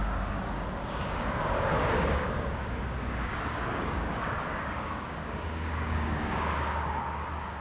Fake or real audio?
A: fake